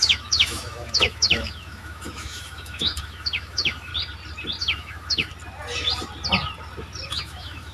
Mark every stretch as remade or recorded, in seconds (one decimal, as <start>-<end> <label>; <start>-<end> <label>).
0.0-3.9 remade; 3.9-4.6 recorded; 4.6-5.3 remade; 5.3-7.1 recorded; 7.1-7.7 remade